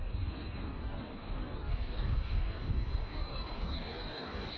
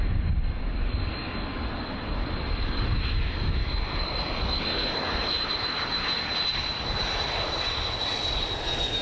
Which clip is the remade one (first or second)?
first